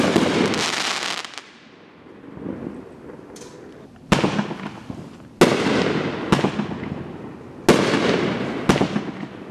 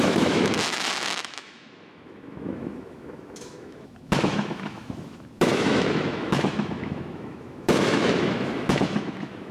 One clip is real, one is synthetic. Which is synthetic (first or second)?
second